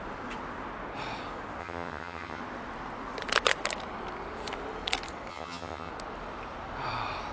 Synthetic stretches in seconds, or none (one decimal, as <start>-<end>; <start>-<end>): 1.6-2.4; 5.3-5.9